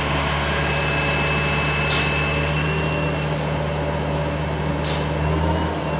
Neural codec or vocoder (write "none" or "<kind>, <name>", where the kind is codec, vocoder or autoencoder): none